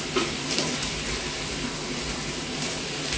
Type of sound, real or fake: fake